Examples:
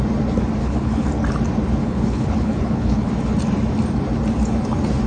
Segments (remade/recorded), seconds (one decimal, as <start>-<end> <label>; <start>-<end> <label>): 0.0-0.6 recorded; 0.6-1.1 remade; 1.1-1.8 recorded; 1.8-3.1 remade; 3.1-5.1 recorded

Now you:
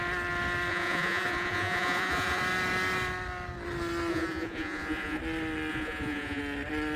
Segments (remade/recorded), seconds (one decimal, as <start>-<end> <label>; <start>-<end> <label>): 0.0-0.7 recorded; 0.7-2.4 remade; 2.4-4.1 recorded; 4.1-5.2 remade; 5.2-5.7 recorded; 5.7-6.4 remade; 6.4-7.0 recorded

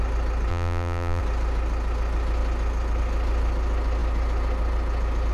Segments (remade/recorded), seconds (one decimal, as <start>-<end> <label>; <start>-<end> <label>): 0.0-0.5 recorded; 0.5-1.2 remade; 1.2-5.3 recorded